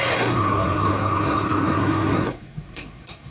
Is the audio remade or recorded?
remade